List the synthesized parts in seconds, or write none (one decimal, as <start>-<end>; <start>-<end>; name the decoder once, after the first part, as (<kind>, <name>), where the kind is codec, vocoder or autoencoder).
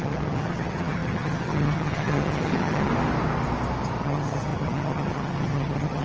0.0-2.9 (vocoder, HiFi-GAN); 4.0-6.0